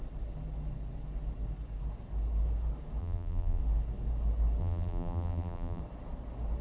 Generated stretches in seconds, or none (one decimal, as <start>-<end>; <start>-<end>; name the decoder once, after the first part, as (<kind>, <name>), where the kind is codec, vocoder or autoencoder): 3.0-3.6 (vocoder, BigVGAN v2); 4.6-5.8